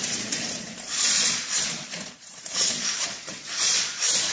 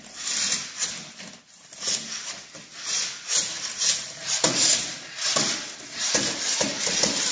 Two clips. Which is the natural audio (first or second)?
second